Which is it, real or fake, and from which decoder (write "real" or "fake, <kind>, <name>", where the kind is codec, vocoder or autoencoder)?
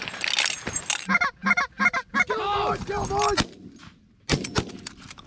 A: real